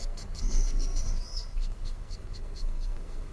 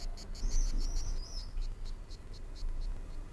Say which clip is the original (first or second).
second